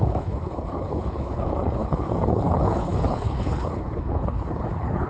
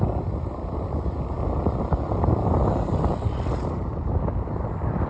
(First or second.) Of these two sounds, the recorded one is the second